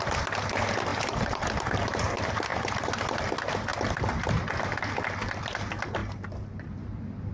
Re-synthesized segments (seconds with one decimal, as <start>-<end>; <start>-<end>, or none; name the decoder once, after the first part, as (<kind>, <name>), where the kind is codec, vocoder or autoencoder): 0.9-1.5 (vocoder, BigVGAN v2); 2.5-3.3; 6.0-6.7